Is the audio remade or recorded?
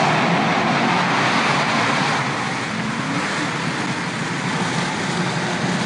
recorded